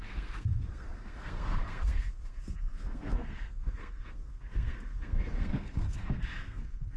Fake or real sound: fake